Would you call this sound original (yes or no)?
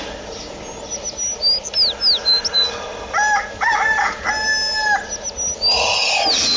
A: yes